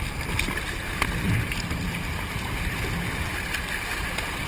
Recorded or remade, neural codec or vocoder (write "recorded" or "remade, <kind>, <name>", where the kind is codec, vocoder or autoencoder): recorded